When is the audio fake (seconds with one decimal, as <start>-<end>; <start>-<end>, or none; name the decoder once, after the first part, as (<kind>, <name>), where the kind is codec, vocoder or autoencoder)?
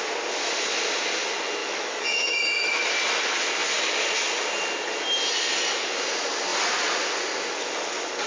1.6-2.9 (autoencoder, DAC-VAE)